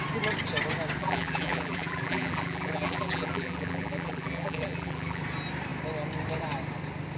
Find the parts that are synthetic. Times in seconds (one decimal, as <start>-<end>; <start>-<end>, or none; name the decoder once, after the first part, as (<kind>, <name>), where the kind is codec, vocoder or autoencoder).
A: 1.0-5.2 (vocoder, BigVGAN v2)